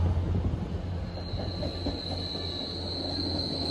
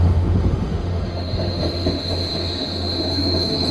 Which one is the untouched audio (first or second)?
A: first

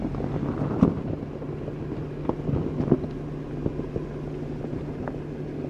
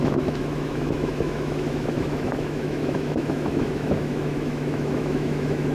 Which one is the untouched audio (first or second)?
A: first